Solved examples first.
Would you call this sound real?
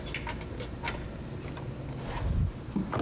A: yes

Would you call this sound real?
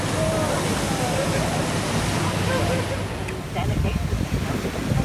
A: yes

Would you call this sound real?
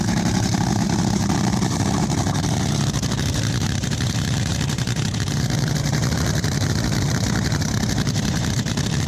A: no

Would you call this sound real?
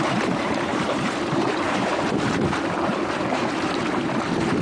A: no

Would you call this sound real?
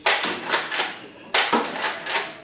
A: yes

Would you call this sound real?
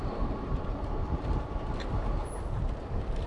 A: no